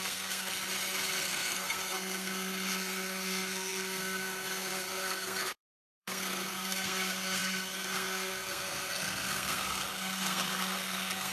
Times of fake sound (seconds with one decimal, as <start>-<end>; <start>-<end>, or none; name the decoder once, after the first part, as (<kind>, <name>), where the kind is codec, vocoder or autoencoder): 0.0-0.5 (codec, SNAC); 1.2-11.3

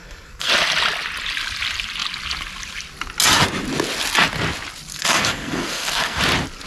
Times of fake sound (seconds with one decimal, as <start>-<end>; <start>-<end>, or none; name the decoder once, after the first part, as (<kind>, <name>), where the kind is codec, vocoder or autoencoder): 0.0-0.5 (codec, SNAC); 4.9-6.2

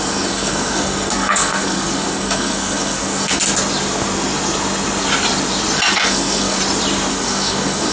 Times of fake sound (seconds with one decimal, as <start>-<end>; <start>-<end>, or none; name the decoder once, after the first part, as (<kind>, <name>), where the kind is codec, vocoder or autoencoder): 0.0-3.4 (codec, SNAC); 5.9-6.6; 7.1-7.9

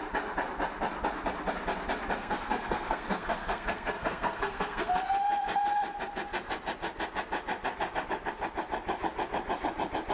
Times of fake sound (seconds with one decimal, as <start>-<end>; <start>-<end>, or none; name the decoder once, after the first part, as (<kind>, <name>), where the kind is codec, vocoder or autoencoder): 2.2-4.9 (codec, SNAC)

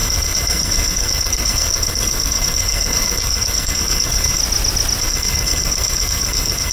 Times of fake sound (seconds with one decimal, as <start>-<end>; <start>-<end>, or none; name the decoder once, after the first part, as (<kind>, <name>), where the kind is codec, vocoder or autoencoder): 0.0-4.4 (codec, SNAC); 5.0-6.7